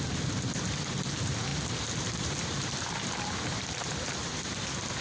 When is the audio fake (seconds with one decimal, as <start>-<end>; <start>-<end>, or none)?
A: 1.5-4.5